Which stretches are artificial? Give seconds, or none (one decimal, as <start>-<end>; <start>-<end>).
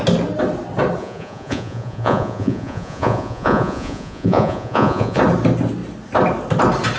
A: 1.0-5.2